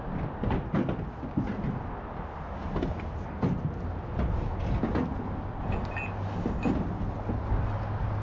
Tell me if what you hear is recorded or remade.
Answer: recorded